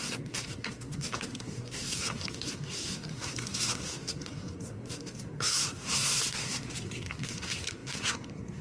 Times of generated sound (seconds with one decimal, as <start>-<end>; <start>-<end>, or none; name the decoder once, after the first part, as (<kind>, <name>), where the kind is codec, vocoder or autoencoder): 0.0-8.6 (codec, SNAC)